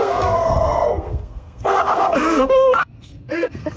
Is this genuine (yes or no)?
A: no